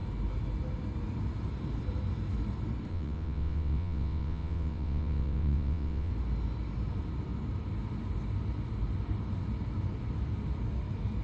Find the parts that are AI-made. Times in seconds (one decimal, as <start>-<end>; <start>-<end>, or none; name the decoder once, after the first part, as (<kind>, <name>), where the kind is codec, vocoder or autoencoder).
2.9-6.1 (vocoder, WaveNeXt)